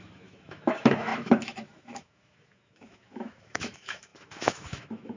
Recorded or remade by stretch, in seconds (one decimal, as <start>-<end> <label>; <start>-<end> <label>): 0.0-5.2 remade